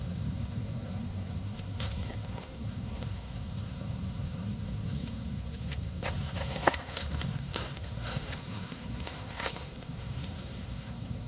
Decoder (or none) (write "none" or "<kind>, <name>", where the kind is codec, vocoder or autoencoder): codec, SNAC